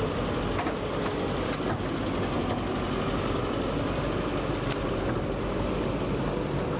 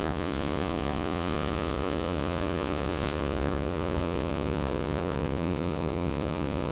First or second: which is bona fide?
first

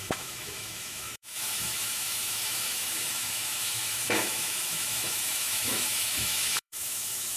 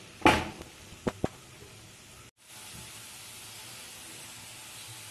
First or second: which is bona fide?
second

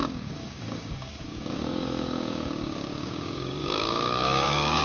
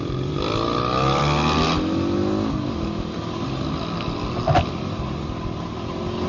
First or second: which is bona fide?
second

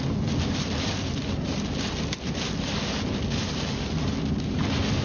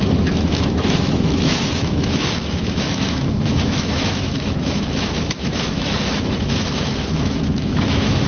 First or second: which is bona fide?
first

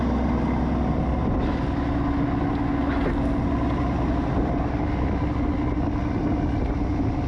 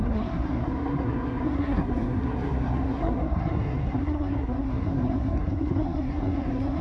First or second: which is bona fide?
first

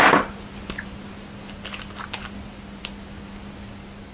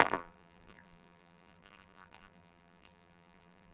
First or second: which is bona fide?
first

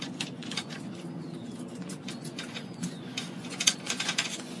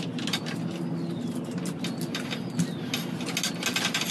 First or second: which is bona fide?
second